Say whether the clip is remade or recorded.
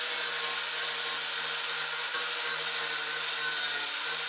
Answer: recorded